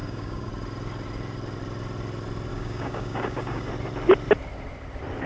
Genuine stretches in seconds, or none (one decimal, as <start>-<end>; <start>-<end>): 0.5-2.5; 3.7-5.3